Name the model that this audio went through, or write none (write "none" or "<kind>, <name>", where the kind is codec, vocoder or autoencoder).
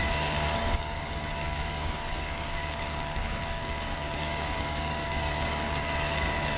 codec, DAC